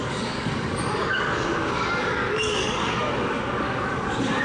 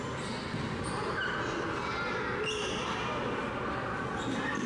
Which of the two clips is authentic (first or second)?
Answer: second